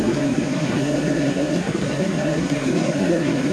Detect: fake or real fake